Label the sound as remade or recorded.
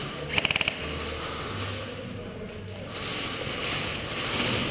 recorded